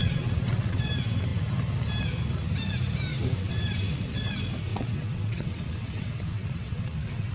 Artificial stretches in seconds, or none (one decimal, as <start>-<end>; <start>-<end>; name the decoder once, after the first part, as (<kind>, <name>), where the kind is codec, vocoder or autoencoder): 0.0-0.9 (vocoder, WaveNeXt); 3.1-4.3; 4.7-7.3